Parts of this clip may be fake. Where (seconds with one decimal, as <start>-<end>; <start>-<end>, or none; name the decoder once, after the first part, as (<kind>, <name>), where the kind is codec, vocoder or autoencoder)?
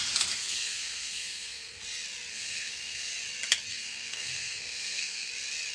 0.4-1.8 (codec, SNAC); 2.3-3.1; 3.7-5.3